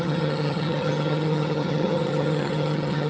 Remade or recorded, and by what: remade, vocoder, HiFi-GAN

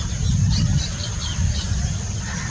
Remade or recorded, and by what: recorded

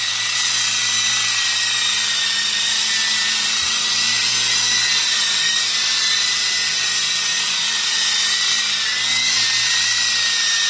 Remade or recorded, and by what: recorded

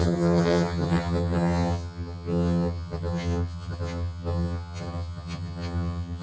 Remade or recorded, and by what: remade, vocoder, HiFi-GAN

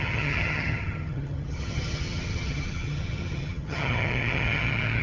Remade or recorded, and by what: remade, vocoder, HiFi-GAN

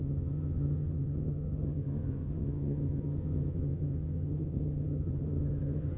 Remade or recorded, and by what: remade, vocoder, HiFi-GAN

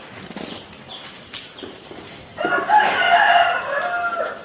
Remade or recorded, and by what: recorded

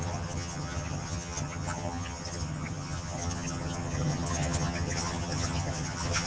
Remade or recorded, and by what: remade, vocoder, HiFi-GAN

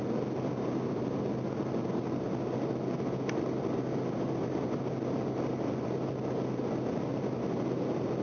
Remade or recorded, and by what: recorded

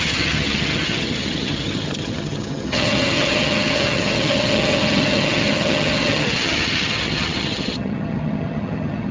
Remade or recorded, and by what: remade, vocoder, HiFi-GAN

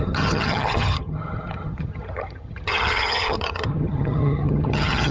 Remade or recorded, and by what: remade, vocoder, HiFi-GAN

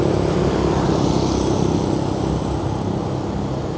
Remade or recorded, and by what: recorded